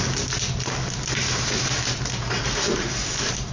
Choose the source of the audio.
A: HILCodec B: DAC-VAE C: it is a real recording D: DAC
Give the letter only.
C